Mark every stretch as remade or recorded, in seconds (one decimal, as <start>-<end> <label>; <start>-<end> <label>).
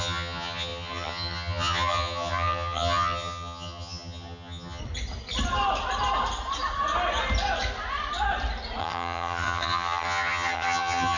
0.0-4.8 remade; 4.8-8.8 recorded; 8.8-11.2 remade